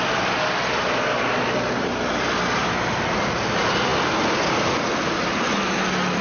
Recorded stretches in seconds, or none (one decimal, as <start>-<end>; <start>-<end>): 0.0-6.2